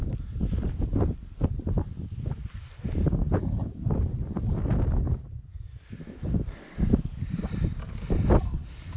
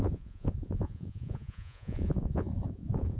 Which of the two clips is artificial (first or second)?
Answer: second